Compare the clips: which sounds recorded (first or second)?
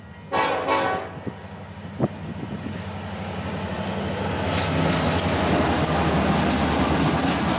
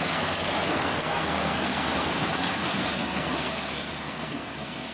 first